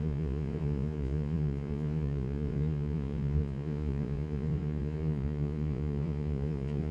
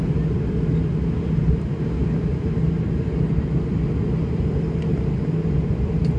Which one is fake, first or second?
first